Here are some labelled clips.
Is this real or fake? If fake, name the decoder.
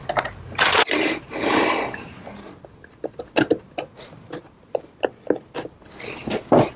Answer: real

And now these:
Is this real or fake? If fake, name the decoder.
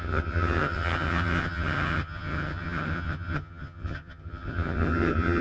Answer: fake, vocoder, HiFi-GAN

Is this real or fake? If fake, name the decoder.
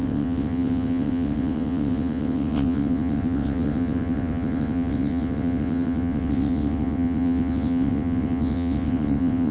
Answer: fake, vocoder, WaveNeXt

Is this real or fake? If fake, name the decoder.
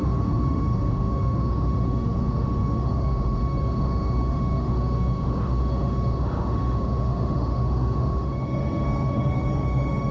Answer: fake, autoencoder, DAC-VAE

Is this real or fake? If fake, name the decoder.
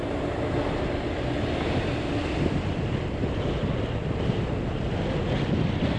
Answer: real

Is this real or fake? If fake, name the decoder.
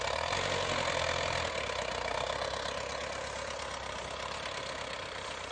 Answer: real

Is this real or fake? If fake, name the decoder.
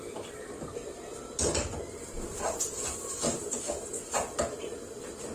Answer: real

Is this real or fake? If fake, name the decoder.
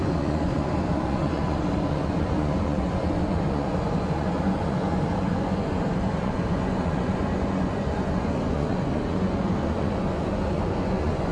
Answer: fake, vocoder, Vocos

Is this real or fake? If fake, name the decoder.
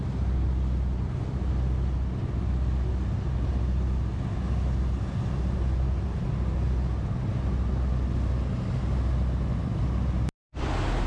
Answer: real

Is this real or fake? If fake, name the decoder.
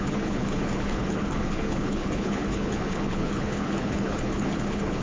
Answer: fake, codec, HILCodec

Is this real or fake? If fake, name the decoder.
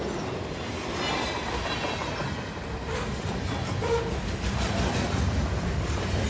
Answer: real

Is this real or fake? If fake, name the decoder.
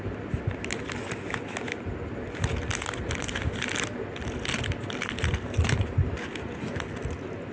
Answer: real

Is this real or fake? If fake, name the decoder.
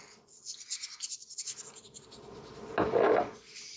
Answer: real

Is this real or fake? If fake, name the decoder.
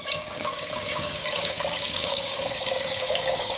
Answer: fake, codec, DAC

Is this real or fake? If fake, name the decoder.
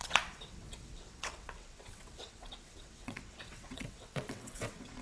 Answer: fake, vocoder, WaveNeXt